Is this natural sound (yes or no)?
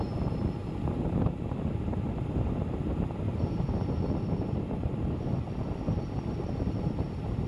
yes